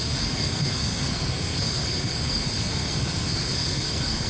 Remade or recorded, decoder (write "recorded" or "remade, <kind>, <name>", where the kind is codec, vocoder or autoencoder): remade, codec, SNAC